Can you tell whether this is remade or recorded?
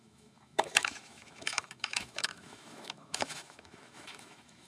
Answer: remade